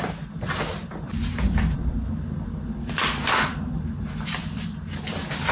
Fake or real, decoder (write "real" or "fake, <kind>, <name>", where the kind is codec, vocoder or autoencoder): fake, vocoder, BigVGAN v2